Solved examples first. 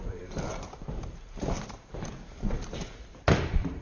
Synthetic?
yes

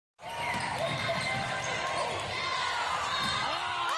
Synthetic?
no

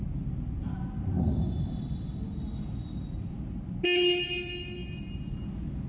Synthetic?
no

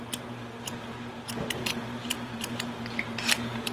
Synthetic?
yes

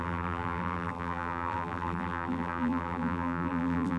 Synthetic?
yes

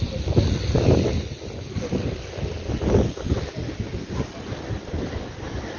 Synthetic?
no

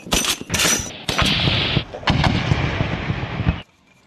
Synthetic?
no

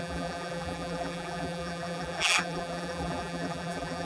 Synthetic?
yes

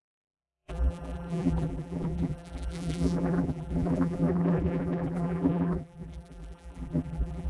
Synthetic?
yes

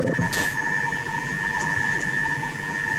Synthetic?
yes